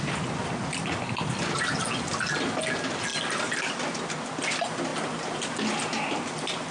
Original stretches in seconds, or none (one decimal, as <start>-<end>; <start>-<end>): 0.0-6.7